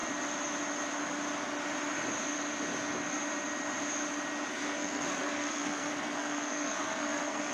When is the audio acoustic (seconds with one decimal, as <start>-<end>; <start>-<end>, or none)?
0.0-4.5